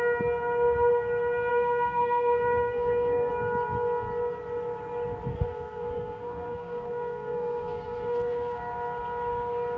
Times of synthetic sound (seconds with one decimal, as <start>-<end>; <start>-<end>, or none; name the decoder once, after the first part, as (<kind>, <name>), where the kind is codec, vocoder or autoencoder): 1.5-3.3 (codec, SNAC); 5.3-8.6